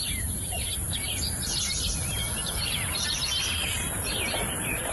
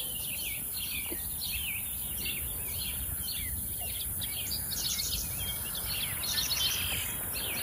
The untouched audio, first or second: second